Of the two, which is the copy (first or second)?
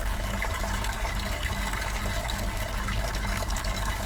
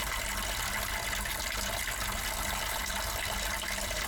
first